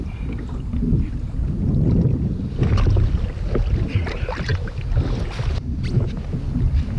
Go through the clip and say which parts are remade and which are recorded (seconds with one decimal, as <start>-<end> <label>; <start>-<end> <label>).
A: 0.0-7.0 recorded

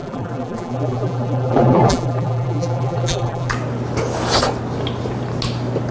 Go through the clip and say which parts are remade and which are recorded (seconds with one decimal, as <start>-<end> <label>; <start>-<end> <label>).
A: 0.0-3.5 remade; 3.5-5.9 recorded